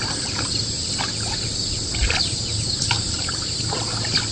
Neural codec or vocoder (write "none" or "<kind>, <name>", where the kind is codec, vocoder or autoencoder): none